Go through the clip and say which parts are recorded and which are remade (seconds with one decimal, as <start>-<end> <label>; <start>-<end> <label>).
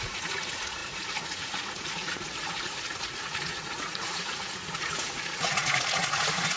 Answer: 0.0-6.6 remade